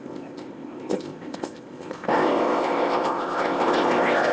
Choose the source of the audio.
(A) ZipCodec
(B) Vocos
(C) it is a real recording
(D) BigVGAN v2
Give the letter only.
A